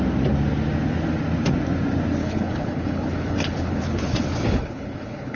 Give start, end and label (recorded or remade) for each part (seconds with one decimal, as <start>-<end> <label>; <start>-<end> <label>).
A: 0.0-2.2 recorded; 2.2-5.4 remade